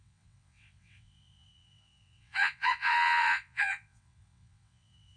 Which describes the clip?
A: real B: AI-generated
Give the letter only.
B